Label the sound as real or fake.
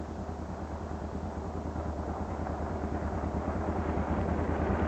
real